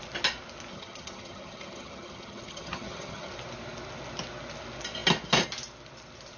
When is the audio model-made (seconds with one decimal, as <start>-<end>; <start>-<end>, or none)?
0.7-3.3